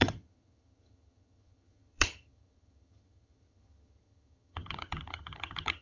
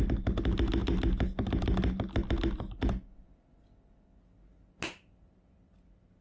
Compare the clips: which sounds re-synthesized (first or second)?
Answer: first